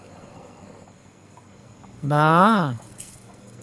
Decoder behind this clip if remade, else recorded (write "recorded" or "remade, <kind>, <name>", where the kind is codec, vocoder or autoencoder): remade, codec, SNAC